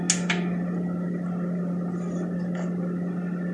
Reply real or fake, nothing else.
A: real